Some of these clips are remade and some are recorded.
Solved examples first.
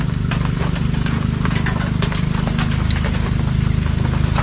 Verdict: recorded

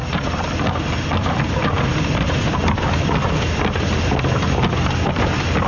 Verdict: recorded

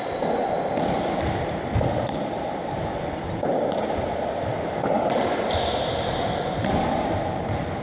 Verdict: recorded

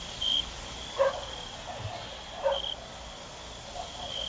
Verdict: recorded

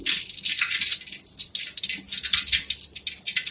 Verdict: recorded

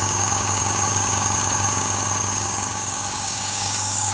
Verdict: remade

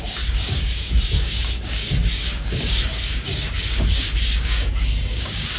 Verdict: remade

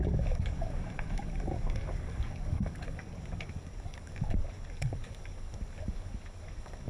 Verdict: remade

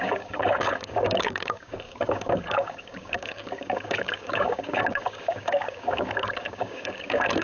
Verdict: remade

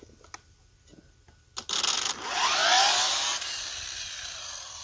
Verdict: recorded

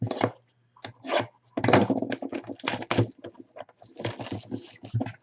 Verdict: recorded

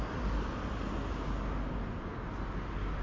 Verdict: recorded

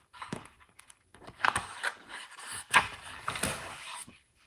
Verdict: remade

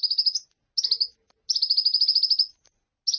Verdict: recorded